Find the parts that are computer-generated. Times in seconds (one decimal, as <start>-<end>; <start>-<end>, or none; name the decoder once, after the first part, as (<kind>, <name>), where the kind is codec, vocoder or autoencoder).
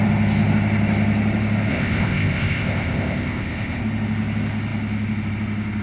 1.7-3.8 (codec, ZipCodec)